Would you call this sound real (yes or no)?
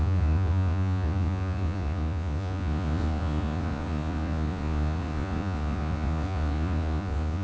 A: no